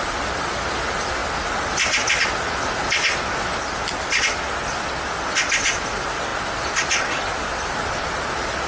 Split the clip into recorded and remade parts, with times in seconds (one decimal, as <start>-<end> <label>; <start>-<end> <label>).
0.0-8.7 recorded